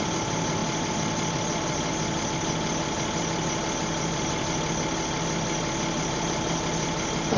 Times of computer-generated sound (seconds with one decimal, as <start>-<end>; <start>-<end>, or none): none